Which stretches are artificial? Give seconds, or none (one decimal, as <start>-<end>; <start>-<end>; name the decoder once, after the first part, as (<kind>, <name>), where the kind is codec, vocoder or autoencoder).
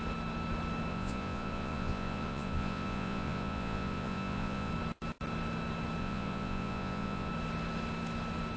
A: 0.9-4.7 (vocoder, Vocos); 6.0-7.3